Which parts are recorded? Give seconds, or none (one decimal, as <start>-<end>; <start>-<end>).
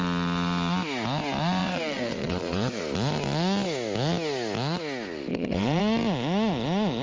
0.0-1.6; 2.8-5.3; 5.8-7.0